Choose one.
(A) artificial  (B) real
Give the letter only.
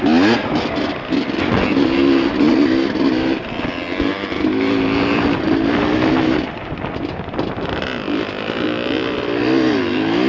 B